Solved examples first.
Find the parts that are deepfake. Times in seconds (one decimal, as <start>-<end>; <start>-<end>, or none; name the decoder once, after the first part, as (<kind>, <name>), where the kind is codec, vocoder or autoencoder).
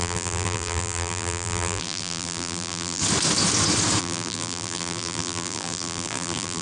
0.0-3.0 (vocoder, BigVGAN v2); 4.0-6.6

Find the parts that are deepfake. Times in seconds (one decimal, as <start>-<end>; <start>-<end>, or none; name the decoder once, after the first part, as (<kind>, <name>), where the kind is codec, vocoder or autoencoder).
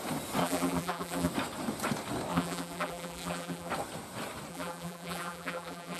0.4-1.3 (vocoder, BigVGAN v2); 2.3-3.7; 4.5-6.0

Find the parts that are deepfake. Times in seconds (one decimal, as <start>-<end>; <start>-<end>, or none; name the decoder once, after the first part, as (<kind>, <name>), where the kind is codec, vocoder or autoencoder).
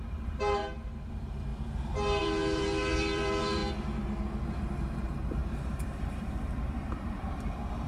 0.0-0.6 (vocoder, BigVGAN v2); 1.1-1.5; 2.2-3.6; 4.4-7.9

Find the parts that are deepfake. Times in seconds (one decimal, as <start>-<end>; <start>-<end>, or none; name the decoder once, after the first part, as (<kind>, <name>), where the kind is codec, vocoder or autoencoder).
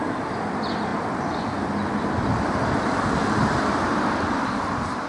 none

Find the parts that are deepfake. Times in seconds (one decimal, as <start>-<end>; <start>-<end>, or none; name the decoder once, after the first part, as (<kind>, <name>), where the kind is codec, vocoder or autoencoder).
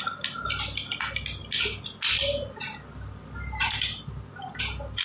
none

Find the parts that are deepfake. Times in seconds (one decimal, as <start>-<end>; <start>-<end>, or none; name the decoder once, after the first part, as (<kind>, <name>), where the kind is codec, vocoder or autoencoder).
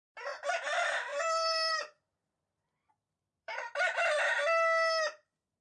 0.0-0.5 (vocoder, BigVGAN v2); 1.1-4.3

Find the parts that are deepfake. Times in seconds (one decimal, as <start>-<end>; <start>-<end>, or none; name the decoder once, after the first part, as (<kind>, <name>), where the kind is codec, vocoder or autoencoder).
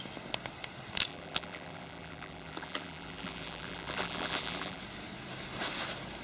1.1-4.8 (vocoder, BigVGAN v2)